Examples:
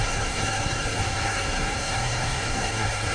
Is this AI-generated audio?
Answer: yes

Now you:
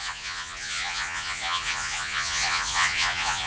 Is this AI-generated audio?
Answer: yes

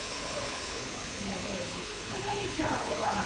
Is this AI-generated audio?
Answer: yes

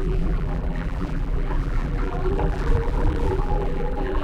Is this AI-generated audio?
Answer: yes